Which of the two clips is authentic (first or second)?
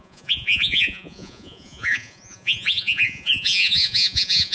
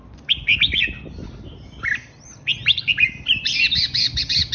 second